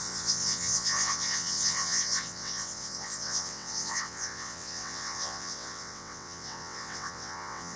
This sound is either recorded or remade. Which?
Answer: remade